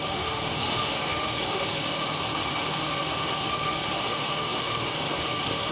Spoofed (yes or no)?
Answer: yes